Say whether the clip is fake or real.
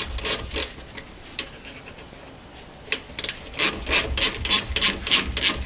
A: real